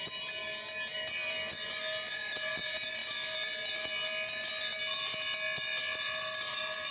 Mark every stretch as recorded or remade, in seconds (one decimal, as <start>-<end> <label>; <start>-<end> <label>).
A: 0.0-0.9 recorded; 0.9-1.8 remade; 1.8-6.9 recorded